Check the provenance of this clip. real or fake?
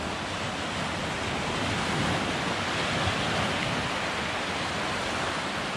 real